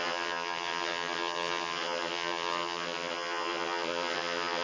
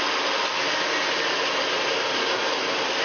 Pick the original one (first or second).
second